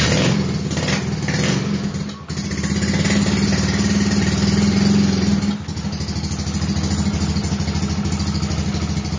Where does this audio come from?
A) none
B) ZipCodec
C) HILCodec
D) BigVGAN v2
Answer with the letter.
A